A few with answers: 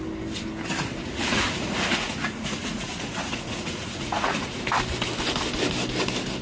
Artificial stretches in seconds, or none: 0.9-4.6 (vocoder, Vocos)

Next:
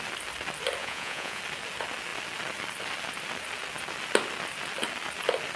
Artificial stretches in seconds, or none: 0.8-1.4 (vocoder, Vocos)

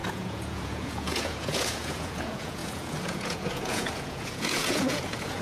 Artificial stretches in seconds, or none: 0.0-5.4 (vocoder, Vocos)